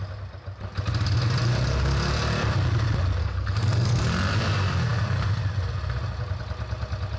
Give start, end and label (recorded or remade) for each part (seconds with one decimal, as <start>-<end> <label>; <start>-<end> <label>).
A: 0.0-3.2 recorded; 3.2-4.0 remade; 4.0-7.2 recorded